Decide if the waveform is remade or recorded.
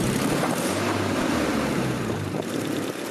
remade